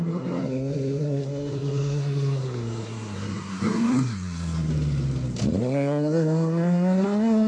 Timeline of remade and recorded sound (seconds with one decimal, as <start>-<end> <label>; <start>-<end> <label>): 0.0-4.7 remade; 4.7-5.6 recorded; 5.6-7.5 remade